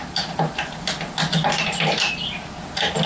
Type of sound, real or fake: real